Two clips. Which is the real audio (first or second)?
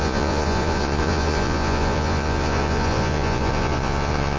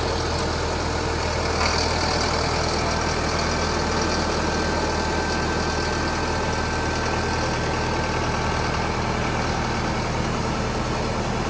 second